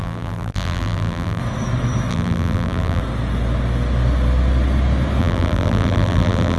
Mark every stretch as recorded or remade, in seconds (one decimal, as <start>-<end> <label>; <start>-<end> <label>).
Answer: 0.0-1.4 remade; 1.4-2.1 recorded; 2.1-3.0 remade; 3.0-5.2 recorded; 5.2-6.6 remade